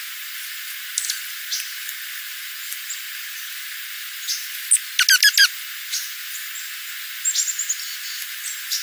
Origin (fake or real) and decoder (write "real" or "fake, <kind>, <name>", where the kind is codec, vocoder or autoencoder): real